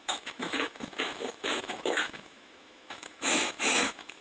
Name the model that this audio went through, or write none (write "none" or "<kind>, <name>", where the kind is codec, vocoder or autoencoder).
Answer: autoencoder, DAC-VAE